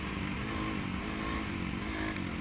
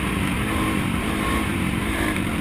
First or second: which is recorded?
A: first